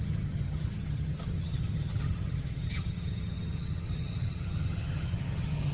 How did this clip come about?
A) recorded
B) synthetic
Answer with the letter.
B